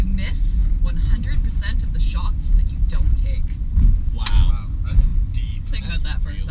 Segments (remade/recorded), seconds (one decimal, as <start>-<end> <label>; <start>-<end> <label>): 0.0-6.5 recorded